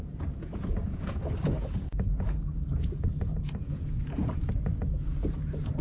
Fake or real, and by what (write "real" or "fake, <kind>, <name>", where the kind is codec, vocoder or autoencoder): fake, vocoder, Vocos